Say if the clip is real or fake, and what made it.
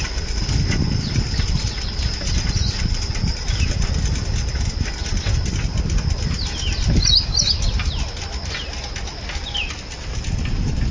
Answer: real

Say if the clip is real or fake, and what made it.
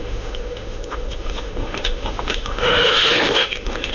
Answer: fake, autoencoder, DAC-VAE